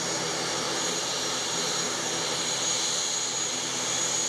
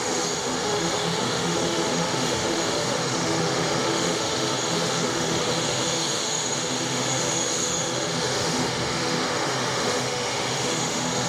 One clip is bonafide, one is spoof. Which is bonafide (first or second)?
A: first